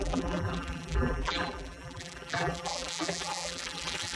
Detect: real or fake fake